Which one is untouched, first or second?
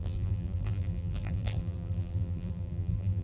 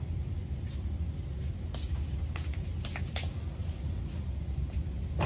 second